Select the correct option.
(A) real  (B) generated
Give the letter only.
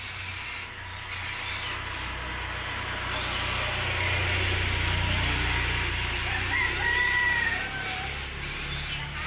A